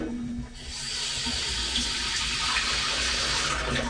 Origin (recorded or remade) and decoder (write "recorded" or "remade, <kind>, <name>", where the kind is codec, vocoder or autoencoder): recorded